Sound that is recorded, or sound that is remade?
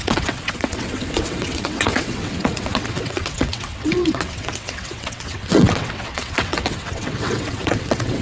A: remade